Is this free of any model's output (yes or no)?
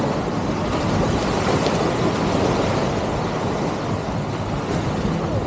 yes